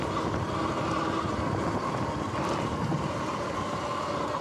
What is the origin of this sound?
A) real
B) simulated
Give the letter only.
A